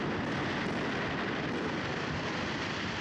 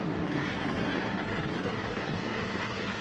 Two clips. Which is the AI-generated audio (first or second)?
second